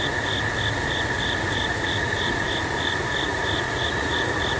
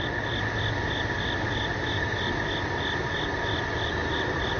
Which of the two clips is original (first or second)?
second